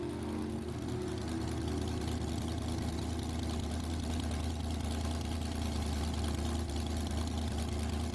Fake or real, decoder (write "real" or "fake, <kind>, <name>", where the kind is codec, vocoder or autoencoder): real